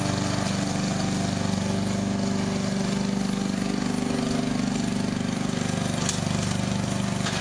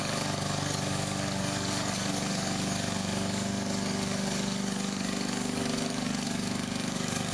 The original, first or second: first